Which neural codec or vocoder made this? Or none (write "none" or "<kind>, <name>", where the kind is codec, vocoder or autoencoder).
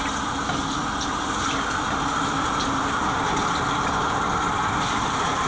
none